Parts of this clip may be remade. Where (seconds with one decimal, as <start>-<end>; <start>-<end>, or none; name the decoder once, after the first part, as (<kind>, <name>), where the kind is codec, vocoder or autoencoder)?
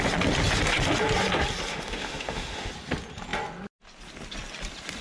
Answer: 1.7-2.7 (autoencoder, DAC-VAE)